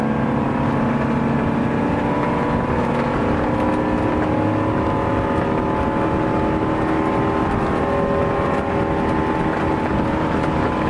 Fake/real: real